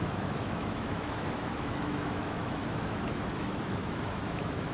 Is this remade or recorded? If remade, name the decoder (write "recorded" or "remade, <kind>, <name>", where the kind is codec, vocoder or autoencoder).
remade, autoencoder, DAC-VAE